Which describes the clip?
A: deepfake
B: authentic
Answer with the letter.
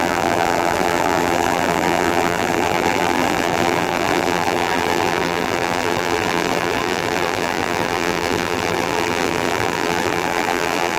A